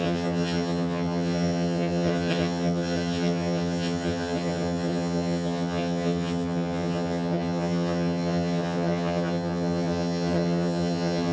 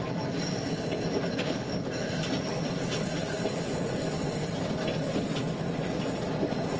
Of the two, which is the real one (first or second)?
second